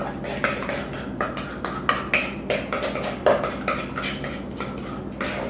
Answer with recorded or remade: recorded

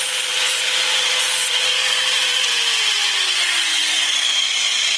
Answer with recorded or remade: remade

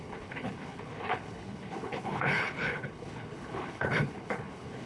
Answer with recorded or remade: remade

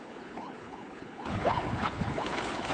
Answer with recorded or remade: remade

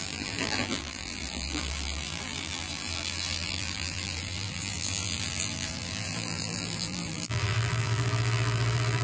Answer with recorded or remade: remade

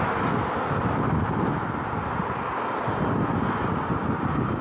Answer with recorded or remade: recorded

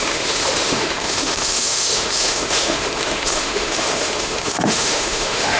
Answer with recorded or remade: remade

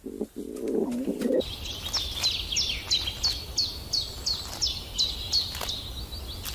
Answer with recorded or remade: recorded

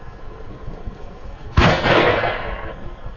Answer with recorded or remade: remade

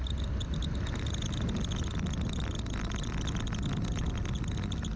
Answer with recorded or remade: recorded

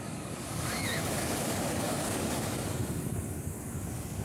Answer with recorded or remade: remade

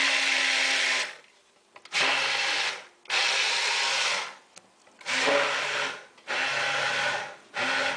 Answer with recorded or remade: recorded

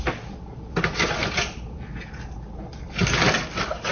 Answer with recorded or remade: recorded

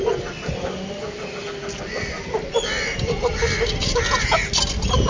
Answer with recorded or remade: recorded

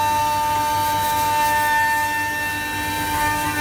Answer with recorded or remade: recorded